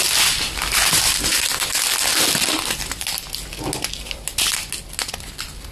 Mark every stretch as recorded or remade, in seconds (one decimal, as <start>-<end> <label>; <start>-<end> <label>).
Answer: 0.0-5.7 recorded